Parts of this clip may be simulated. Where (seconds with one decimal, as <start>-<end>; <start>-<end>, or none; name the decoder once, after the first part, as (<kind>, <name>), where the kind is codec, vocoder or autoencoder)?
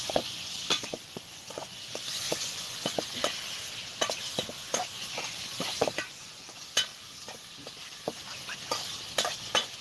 0.0-3.4 (vocoder, Vocos); 4.8-6.9; 9.4-9.8